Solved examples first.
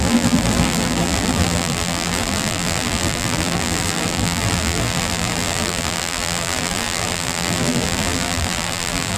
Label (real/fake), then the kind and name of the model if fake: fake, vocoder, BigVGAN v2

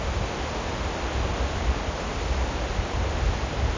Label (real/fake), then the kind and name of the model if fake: real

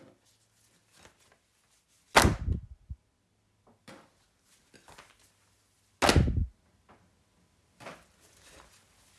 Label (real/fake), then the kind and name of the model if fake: real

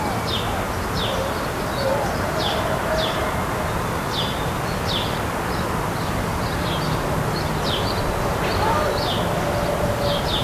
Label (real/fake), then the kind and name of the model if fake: real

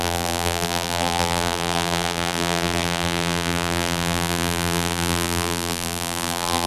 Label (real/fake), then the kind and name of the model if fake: fake, vocoder, BigVGAN v2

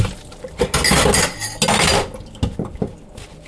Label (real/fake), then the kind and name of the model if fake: real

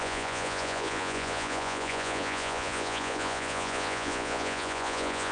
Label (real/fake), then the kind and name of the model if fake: fake, vocoder, Vocos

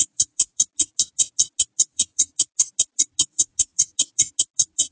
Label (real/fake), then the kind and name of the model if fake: real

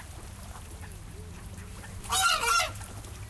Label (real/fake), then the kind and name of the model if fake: real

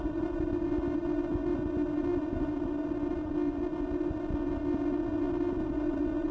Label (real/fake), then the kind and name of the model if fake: real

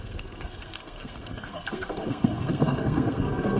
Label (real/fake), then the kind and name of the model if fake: fake, codec, SNAC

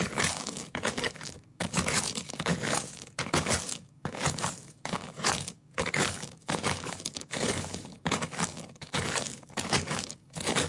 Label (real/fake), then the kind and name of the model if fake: fake, codec, DAC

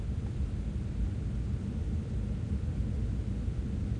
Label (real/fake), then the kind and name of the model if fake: real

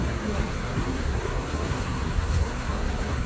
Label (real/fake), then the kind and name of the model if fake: fake, codec, SNAC